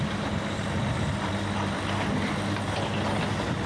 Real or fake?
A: real